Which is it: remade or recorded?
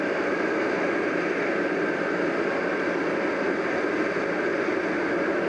recorded